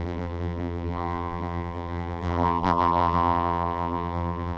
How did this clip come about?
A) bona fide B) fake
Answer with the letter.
B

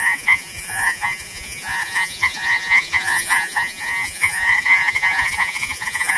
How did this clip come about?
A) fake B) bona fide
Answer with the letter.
A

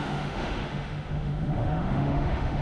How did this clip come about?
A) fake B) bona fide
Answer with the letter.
A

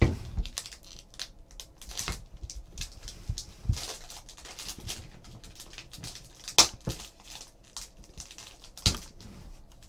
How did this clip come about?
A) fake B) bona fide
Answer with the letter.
B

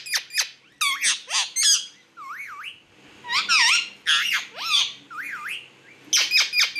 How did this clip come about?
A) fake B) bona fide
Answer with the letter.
B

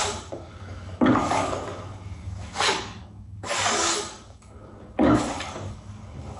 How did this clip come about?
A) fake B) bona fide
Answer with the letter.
A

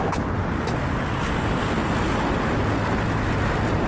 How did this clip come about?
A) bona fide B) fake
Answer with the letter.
A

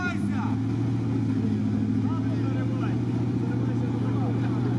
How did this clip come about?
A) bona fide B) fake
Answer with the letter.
A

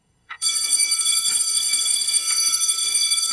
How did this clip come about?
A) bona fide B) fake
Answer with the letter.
B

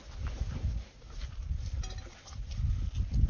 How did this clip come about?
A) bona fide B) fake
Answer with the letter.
A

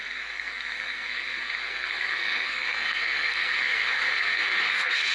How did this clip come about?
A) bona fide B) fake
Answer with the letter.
B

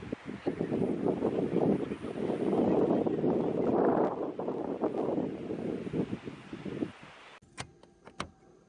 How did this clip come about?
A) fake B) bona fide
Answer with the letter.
B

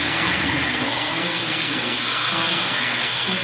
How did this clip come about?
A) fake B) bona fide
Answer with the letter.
A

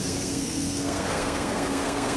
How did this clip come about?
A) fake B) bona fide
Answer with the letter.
A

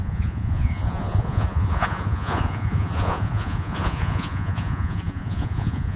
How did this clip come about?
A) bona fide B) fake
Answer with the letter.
B